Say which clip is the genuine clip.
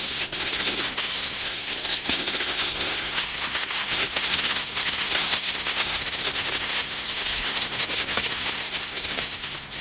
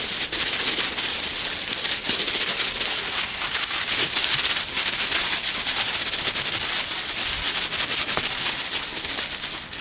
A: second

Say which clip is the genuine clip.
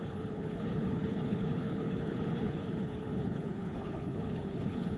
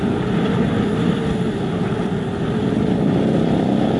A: second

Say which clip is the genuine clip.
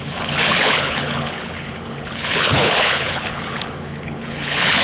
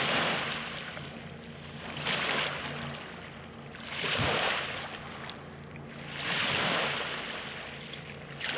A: second